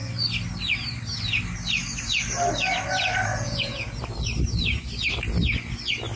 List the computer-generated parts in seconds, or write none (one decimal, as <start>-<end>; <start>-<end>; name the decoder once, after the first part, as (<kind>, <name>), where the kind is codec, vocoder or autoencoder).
3.3-4.0 (vocoder, Vocos)